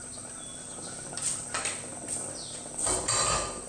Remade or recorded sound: recorded